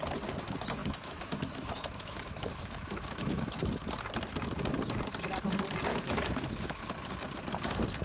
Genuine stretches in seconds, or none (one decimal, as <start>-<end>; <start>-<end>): 0.0-0.8; 3.6-5.9; 6.8-8.0